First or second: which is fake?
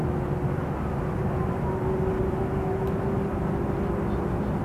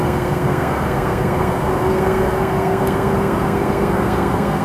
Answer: second